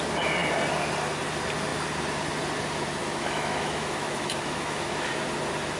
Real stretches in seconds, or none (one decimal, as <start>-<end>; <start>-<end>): 0.0-3.0; 5.1-5.8